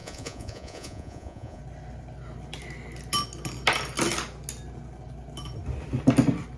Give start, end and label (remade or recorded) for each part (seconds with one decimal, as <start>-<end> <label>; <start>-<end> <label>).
0.0-1.6 remade; 1.6-6.6 recorded